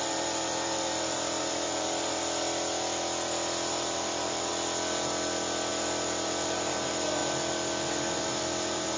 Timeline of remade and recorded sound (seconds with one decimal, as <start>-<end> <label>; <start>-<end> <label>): 0.0-2.2 remade; 2.2-3.7 recorded; 3.7-4.5 remade; 4.5-5.7 recorded; 5.7-7.2 remade; 7.2-8.2 recorded; 8.2-9.0 remade